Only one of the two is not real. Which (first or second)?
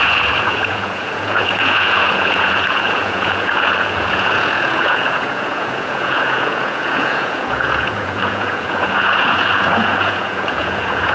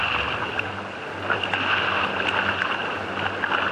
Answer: first